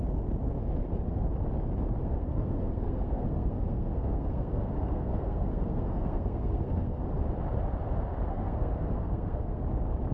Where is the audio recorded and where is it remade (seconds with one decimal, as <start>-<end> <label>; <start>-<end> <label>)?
0.0-2.0 recorded; 2.0-7.0 remade; 7.0-8.3 recorded; 8.3-9.6 remade; 9.6-10.1 recorded